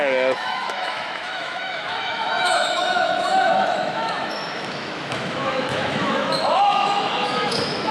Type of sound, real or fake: fake